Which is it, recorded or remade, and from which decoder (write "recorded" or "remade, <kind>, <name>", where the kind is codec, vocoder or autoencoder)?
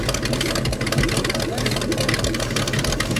recorded